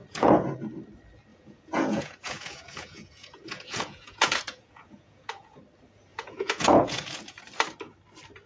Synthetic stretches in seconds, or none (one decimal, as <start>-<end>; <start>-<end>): 0.0-0.5; 1.3-5.6; 6.1-7.4